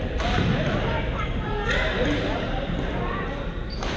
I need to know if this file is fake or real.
real